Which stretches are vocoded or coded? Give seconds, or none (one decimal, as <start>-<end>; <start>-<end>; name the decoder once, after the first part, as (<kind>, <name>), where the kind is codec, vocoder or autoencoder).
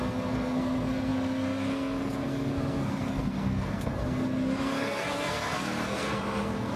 0.0-6.8 (codec, SNAC)